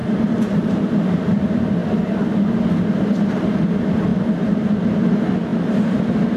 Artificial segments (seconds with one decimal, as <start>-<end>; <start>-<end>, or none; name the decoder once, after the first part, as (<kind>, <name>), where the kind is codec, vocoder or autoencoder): 0.0-1.0 (vocoder, BigVGAN v2)